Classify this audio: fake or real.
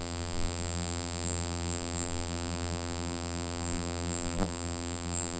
fake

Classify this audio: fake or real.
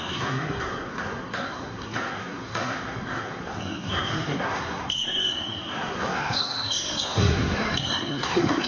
fake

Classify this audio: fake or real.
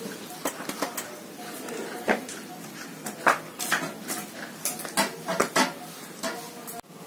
real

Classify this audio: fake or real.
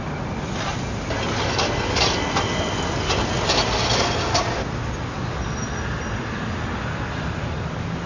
real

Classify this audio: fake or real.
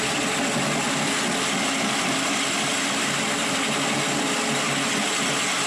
real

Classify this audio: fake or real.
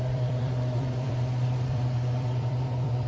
fake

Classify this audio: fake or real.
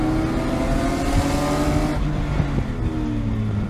real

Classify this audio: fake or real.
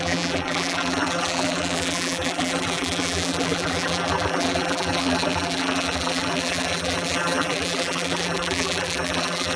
fake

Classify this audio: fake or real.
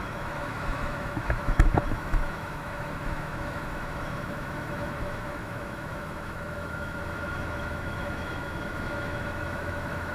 fake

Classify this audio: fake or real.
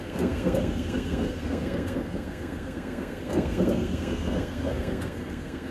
fake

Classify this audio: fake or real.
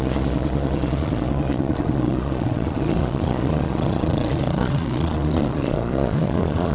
fake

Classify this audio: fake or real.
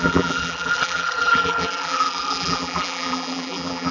fake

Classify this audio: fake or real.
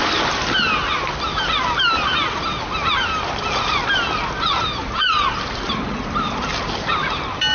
real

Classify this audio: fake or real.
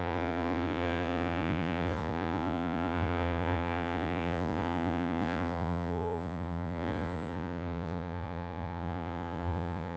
fake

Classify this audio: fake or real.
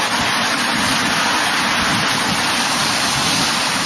real